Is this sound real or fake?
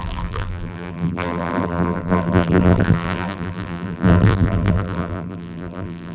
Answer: fake